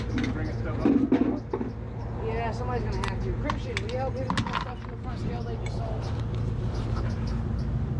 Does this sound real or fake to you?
real